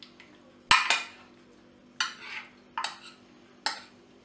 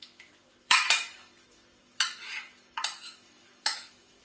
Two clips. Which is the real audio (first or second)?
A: first